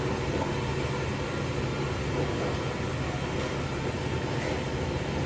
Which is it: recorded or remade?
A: recorded